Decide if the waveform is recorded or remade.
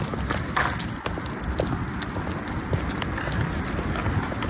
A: recorded